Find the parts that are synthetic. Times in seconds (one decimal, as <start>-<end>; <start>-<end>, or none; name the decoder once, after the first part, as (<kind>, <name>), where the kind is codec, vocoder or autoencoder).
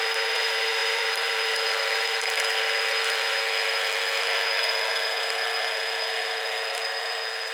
0.0-7.5 (codec, SNAC)